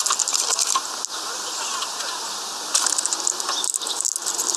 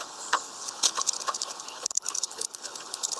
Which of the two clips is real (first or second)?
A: first